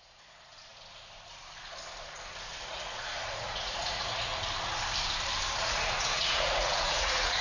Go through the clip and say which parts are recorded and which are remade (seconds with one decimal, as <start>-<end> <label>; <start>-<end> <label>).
0.0-0.7 remade; 0.7-2.5 recorded; 2.5-4.3 remade; 4.3-5.6 recorded; 5.6-7.4 remade